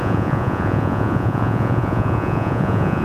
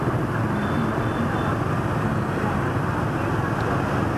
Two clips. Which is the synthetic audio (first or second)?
first